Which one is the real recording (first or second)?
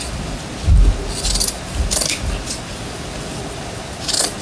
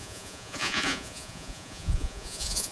first